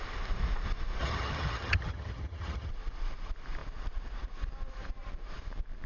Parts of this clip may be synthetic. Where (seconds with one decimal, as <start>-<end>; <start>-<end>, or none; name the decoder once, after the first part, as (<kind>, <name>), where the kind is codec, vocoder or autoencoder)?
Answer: 1.0-2.7 (vocoder, HiFi-GAN)